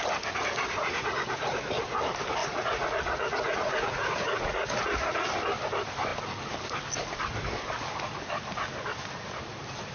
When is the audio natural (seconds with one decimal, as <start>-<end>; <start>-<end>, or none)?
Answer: 0.0-0.8; 1.6-2.4; 5.3-9.9